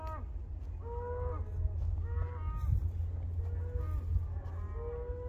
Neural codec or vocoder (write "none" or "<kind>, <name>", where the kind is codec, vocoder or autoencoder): none